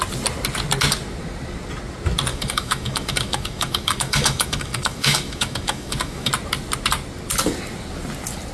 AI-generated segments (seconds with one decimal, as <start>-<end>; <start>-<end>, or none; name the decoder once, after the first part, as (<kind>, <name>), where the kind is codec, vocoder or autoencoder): 2.3-6.3 (autoencoder, DAC-VAE)